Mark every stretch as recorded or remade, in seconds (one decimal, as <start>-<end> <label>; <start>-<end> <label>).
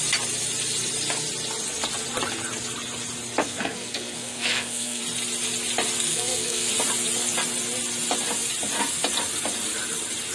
0.0-3.4 recorded; 3.4-5.0 remade; 5.0-6.1 recorded; 6.1-6.7 remade; 6.7-10.3 recorded